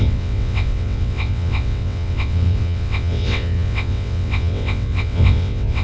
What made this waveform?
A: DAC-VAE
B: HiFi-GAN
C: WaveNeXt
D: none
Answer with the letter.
C